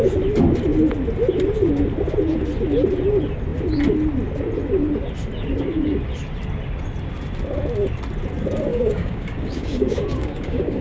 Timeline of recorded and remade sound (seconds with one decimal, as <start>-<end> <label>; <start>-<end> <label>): 0.0-8.7 recorded; 8.7-10.8 remade